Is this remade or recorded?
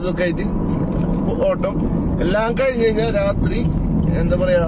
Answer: recorded